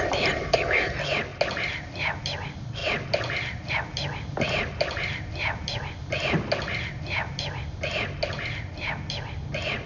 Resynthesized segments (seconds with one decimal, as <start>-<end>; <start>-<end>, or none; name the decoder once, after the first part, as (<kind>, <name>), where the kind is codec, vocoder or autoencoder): none